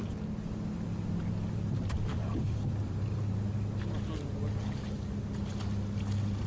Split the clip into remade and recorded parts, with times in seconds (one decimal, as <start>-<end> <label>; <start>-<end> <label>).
0.0-2.1 recorded; 2.1-3.0 remade; 3.0-6.5 recorded